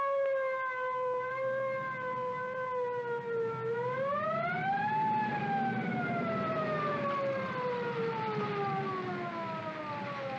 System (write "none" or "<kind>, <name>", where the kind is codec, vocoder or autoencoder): none